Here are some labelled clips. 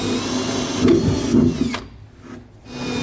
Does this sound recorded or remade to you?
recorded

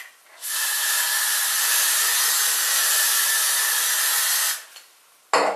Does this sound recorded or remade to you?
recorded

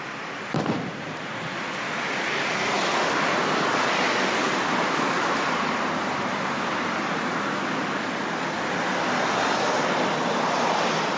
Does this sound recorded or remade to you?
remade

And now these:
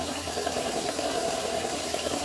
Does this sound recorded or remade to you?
remade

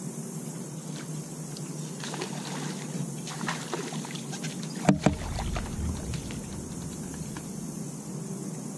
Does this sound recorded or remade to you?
recorded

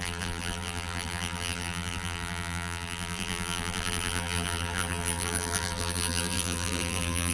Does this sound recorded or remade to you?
remade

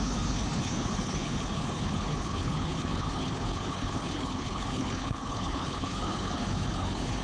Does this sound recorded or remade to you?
remade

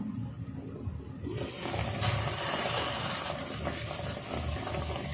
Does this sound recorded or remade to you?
recorded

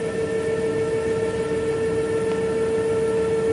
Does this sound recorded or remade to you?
remade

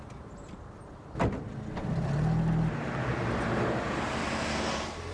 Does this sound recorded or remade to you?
recorded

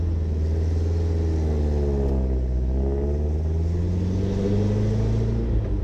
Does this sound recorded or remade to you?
recorded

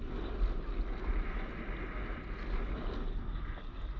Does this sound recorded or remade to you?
recorded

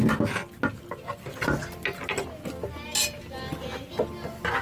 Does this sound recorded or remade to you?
recorded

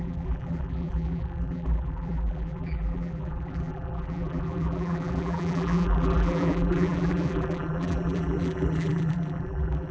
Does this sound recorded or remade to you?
remade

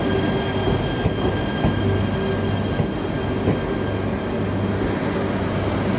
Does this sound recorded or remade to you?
recorded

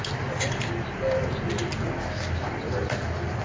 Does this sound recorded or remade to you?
recorded